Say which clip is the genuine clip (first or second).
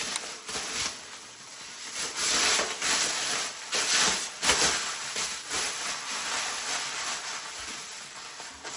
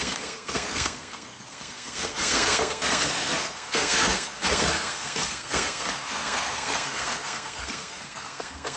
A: first